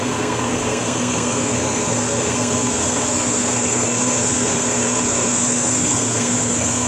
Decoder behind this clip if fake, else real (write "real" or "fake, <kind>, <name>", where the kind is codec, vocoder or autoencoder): fake, codec, SNAC